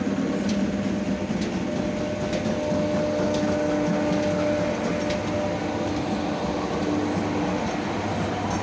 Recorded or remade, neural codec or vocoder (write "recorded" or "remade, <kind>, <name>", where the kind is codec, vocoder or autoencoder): recorded